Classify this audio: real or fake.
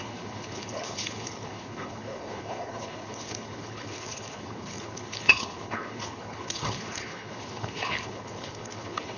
fake